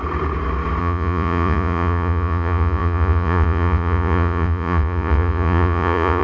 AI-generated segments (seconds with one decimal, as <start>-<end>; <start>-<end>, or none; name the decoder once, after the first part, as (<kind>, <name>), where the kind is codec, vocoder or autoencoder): 0.8-6.2 (vocoder, Vocos)